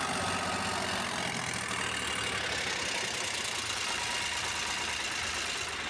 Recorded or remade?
recorded